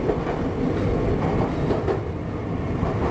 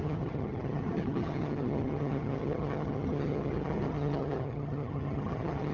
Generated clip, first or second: second